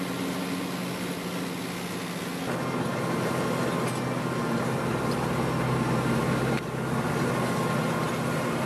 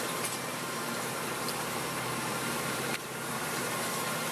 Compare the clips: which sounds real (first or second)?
first